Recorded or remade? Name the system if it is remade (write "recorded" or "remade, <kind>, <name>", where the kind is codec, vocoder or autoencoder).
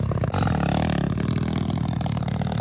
recorded